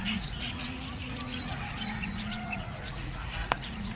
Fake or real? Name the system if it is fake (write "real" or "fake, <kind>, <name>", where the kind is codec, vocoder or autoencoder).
fake, vocoder, Vocos